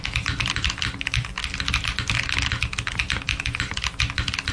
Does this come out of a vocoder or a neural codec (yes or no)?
no